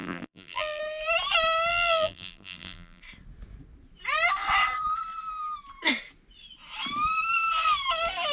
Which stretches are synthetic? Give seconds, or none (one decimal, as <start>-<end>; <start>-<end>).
0.0-0.8; 1.7-3.0